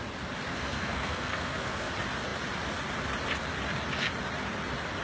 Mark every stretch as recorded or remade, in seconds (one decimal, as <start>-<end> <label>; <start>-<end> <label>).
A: 0.0-0.5 recorded; 0.5-1.9 remade; 1.9-5.0 recorded